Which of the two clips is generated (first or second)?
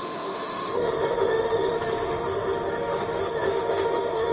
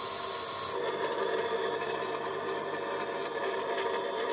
first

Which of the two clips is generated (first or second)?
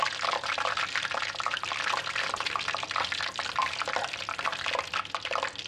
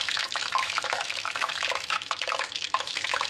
second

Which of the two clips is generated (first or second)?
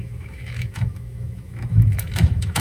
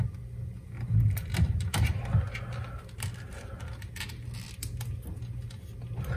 first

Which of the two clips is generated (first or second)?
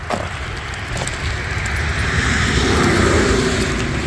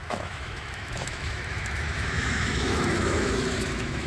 second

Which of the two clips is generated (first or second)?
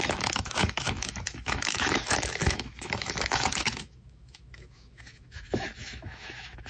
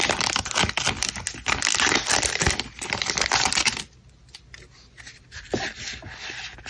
first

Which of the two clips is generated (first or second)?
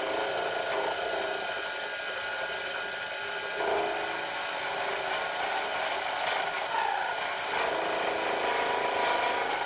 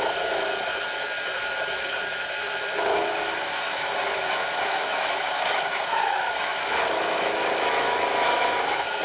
second